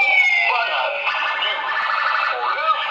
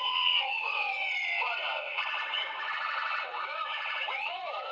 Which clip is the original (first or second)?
first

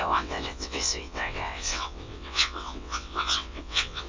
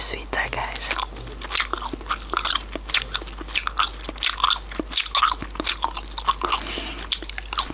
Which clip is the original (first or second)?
second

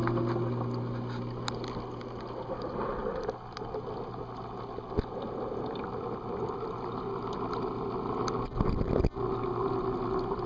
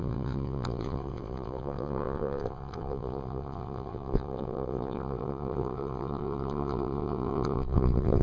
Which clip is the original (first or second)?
first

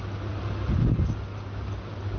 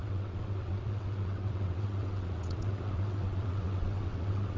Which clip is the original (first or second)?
first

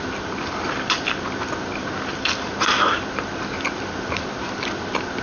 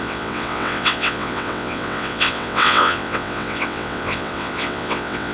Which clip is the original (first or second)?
first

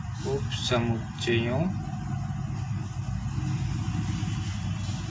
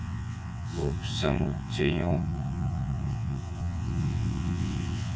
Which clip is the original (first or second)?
first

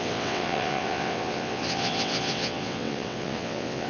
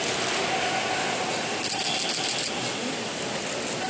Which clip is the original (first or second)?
second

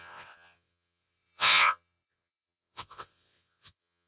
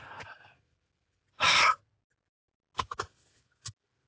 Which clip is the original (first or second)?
second